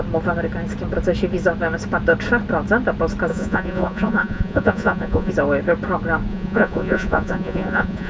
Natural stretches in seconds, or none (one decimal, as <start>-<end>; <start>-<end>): 0.0-3.3; 5.3-6.3